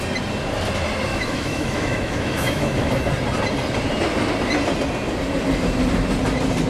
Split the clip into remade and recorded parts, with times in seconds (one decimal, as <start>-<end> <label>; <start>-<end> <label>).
0.0-1.1 recorded; 1.1-2.9 remade; 2.9-6.7 recorded